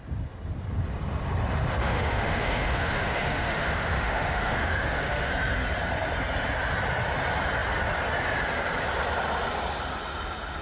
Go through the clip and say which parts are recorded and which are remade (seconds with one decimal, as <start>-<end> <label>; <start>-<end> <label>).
0.0-1.8 recorded; 1.8-5.3 remade; 5.3-10.6 recorded

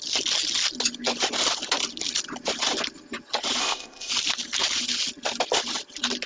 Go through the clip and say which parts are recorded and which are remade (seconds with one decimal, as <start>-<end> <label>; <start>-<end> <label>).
0.0-3.6 recorded; 3.6-4.1 remade; 4.1-6.3 recorded

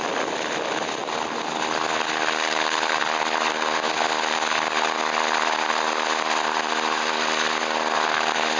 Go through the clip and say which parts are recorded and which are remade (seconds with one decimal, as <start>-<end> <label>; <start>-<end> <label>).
0.0-8.6 recorded